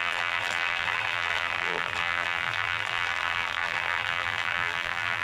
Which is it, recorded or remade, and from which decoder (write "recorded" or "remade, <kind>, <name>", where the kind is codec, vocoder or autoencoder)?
remade, vocoder, BigVGAN v2